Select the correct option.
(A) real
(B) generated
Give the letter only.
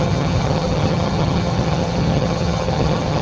B